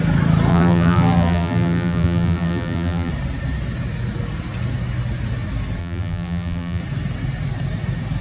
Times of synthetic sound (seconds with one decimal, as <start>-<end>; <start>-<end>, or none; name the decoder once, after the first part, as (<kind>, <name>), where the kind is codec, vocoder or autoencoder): 0.5-3.1 (vocoder, BigVGAN v2); 5.8-6.8